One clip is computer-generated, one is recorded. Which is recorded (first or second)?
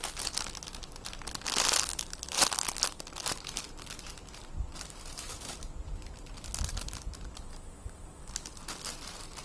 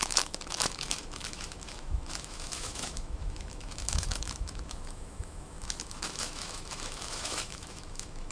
first